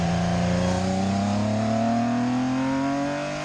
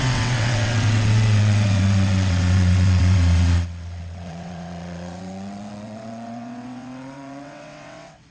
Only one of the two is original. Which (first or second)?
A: first